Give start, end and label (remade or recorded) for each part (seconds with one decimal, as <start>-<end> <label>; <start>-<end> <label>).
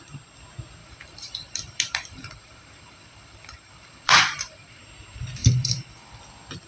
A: 0.0-0.8 recorded; 0.8-4.8 remade; 4.8-5.4 recorded; 5.4-6.2 remade; 6.2-6.7 recorded